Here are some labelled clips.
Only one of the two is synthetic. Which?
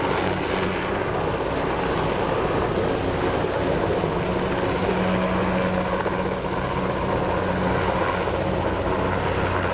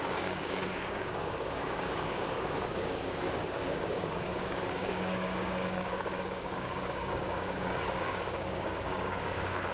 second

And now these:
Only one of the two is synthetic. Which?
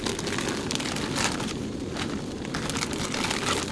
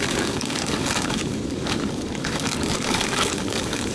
second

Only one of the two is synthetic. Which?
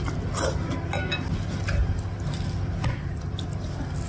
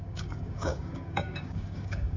second